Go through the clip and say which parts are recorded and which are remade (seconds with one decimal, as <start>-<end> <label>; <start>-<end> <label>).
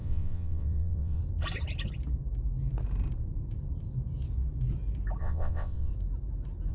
0.0-1.2 remade; 1.2-5.2 recorded; 5.2-5.9 remade; 5.9-6.7 recorded